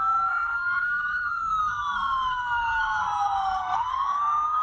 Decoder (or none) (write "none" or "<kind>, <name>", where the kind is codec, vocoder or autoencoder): codec, SNAC